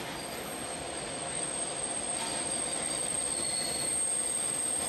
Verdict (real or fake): real